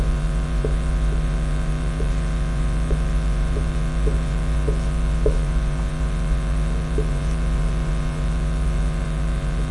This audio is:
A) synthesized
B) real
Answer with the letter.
A